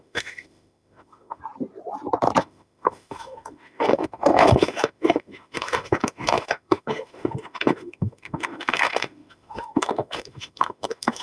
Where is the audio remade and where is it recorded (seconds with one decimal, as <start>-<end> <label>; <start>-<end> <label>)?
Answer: 0.0-1.4 remade; 1.4-2.4 recorded; 2.4-11.2 remade